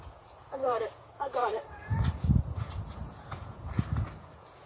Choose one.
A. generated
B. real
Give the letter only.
A